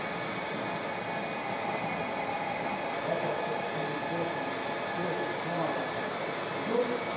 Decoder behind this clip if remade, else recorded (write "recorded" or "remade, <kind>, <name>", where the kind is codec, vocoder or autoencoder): recorded